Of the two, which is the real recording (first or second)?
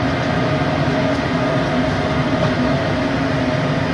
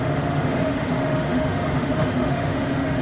first